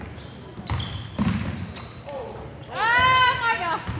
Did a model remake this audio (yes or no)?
no